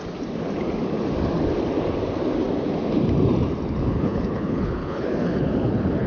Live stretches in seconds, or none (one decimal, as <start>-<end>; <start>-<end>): 0.0-3.7